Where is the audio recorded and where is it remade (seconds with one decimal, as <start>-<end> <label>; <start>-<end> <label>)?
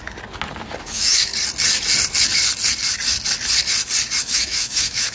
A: 0.0-0.8 recorded; 0.8-1.3 remade; 1.3-4.2 recorded; 4.2-5.1 remade